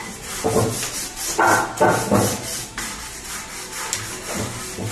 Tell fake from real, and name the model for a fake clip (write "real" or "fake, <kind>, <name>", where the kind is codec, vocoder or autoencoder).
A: real